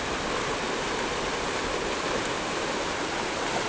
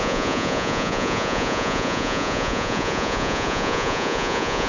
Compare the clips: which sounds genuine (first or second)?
first